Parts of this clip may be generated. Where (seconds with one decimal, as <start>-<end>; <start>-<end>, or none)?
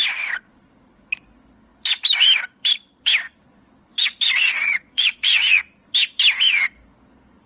3.9-5.5